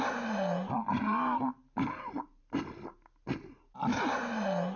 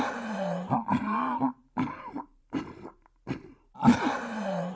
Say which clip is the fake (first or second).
second